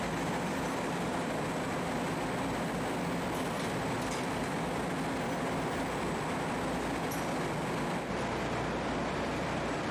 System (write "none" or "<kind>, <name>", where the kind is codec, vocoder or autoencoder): none